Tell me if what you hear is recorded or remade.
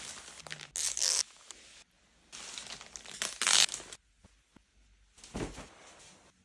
recorded